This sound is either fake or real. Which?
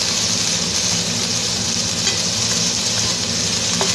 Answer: real